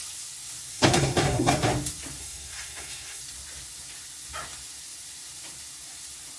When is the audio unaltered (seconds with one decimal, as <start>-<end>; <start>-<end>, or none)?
0.0-0.7; 1.5-2.2; 3.2-6.4